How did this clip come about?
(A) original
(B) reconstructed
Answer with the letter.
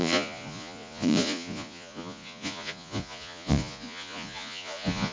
B